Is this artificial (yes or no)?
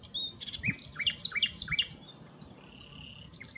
no